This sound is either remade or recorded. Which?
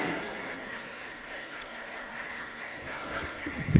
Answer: remade